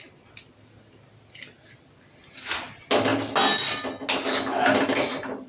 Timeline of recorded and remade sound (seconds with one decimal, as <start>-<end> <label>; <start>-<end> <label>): 0.0-5.5 recorded